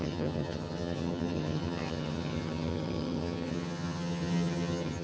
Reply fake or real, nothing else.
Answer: fake